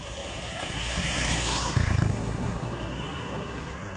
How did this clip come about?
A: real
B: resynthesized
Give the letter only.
B